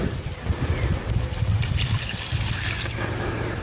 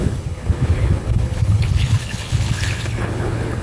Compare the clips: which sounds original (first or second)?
first